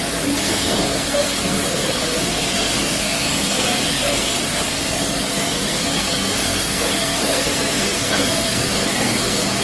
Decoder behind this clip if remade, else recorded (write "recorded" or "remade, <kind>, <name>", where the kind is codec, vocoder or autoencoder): remade, codec, SNAC